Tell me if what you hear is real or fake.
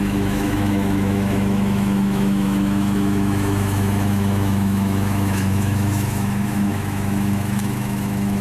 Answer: fake